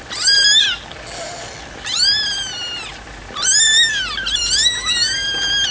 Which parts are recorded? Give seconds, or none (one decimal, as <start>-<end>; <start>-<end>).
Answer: 0.0-5.7